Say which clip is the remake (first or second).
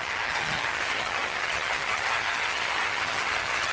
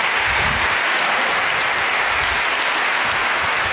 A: first